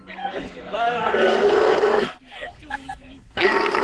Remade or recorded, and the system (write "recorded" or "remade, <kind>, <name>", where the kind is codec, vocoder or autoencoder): remade, codec, SNAC